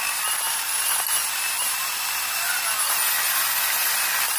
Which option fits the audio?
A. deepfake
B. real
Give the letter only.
B